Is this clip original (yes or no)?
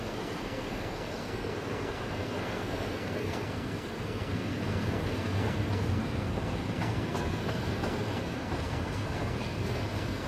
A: no